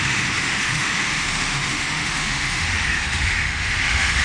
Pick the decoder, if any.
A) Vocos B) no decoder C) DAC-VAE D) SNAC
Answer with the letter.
C